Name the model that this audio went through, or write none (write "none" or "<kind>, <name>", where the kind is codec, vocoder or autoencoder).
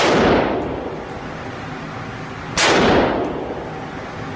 none